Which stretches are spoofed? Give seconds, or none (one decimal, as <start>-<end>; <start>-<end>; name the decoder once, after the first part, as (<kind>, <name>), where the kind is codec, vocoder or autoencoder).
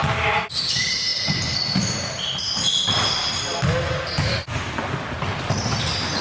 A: none